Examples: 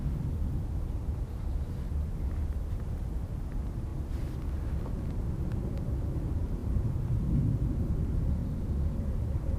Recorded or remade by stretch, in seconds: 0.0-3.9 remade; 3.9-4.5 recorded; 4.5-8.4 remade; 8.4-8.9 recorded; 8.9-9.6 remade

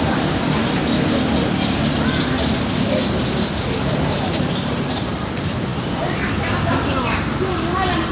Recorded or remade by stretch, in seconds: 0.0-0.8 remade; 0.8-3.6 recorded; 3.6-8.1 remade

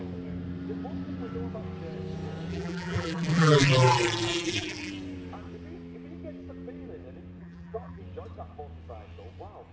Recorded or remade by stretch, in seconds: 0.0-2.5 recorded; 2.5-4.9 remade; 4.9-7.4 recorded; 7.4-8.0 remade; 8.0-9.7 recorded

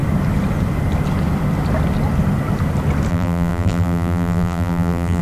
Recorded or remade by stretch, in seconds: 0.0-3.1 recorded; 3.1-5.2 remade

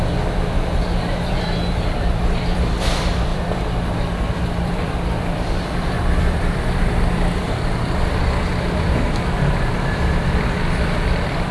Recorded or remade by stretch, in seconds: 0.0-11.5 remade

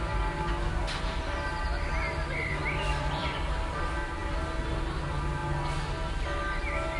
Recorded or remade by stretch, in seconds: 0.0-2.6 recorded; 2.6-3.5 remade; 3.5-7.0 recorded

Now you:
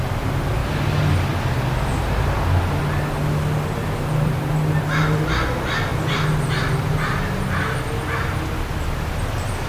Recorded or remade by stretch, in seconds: 0.0-9.7 recorded

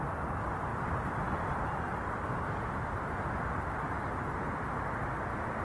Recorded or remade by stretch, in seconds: 0.0-0.7 recorded; 0.7-1.9 remade; 1.9-5.6 recorded